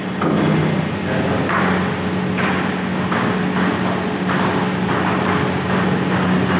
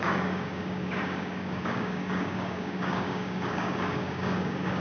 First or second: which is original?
first